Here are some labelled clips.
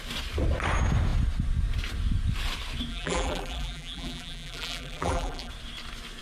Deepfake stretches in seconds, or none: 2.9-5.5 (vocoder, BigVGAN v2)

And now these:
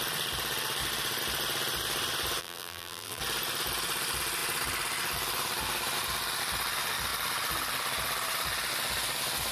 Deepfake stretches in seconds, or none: 2.4-3.2 (vocoder, BigVGAN v2)

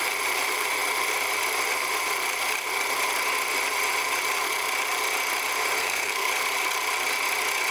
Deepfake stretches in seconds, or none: 5.8-6.3 (codec, SNAC)

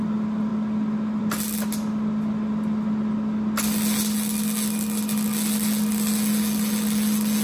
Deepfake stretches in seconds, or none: none